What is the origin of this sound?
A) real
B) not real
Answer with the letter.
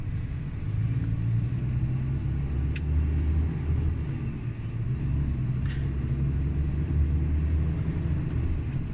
A